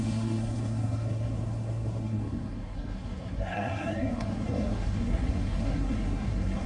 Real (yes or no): no